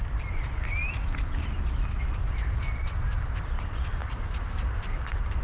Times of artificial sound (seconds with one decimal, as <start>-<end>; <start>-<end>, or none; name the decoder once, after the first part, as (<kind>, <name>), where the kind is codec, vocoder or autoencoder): 4.0-5.4 (codec, DAC)